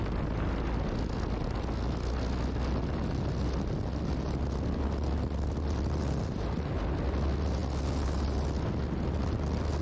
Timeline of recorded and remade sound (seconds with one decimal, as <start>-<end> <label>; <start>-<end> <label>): 0.0-9.8 recorded